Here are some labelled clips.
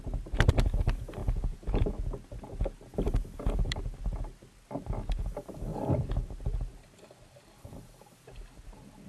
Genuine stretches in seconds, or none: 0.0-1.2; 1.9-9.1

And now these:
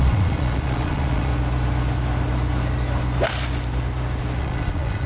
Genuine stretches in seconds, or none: 1.3-4.4

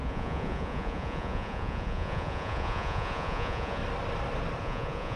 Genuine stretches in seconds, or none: 3.8-4.6

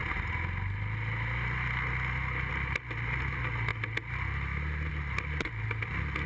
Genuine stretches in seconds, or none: 0.0-6.3